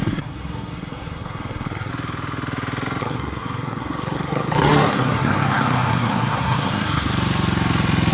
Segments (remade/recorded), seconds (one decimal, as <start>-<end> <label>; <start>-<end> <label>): 0.0-1.9 remade; 1.9-3.0 recorded; 3.0-7.1 remade; 7.1-8.1 recorded